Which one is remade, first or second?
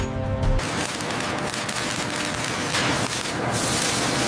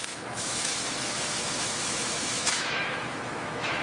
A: second